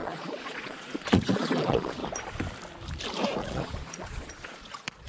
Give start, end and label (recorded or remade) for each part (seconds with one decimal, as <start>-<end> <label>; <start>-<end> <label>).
0.0-2.0 remade; 2.0-3.4 recorded; 3.4-5.1 remade

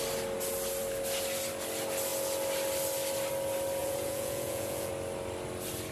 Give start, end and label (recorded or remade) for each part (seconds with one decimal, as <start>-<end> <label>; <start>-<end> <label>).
0.0-3.8 recorded; 3.8-4.9 remade; 4.9-5.9 recorded

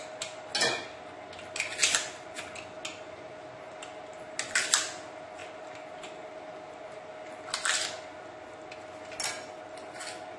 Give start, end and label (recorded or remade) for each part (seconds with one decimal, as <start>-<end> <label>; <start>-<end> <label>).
0.0-10.4 recorded

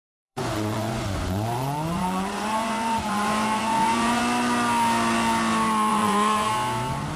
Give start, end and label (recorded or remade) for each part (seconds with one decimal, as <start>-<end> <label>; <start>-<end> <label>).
0.0-4.2 remade; 4.2-5.9 recorded; 5.9-6.5 remade; 6.5-7.2 recorded

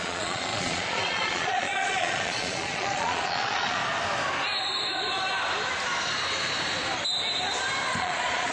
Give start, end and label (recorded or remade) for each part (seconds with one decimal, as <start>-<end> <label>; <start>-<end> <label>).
0.0-3.8 remade; 3.8-8.0 recorded; 8.0-8.5 remade

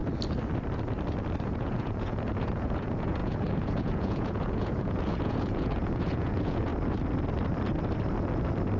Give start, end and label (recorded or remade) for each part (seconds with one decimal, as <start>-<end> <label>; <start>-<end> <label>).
0.0-1.4 recorded; 1.4-6.7 remade; 6.7-8.8 recorded

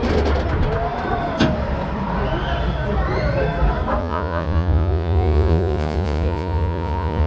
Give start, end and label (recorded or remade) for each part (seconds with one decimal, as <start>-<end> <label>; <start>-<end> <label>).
0.0-4.0 recorded; 4.0-7.3 remade